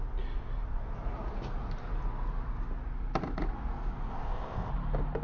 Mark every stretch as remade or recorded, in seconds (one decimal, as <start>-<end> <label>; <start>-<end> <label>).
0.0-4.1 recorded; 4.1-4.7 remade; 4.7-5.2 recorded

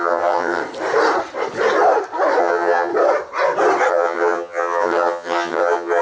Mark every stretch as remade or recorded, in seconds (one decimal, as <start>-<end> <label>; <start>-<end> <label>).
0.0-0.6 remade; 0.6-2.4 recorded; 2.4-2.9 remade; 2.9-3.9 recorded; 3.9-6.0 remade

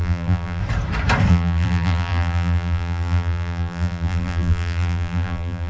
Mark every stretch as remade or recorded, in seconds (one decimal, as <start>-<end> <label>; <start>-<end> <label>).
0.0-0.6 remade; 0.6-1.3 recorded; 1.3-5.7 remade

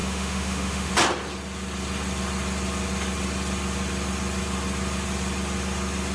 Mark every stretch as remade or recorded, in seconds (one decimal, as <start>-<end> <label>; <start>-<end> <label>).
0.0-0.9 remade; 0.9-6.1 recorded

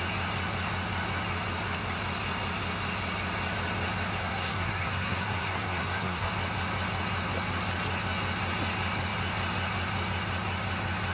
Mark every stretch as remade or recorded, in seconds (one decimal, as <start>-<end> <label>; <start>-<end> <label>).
0.0-4.2 recorded; 4.2-6.3 remade; 6.3-11.1 recorded